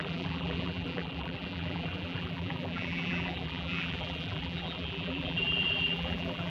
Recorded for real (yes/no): no